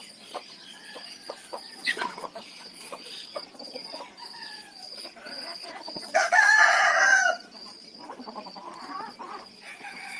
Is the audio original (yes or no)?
no